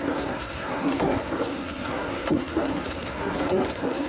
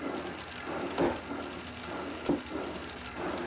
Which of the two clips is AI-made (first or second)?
first